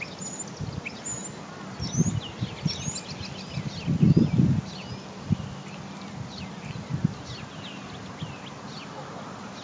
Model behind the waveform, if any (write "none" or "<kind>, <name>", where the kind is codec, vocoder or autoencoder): none